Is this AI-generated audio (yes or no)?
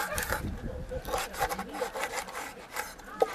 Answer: no